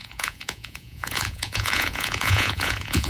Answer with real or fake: fake